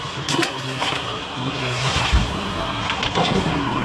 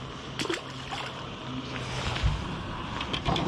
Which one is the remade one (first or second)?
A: first